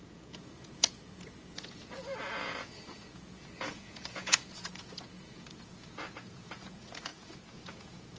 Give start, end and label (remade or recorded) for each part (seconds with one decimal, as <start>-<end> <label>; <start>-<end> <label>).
0.0-8.2 remade